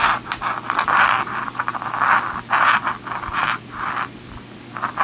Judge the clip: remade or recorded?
recorded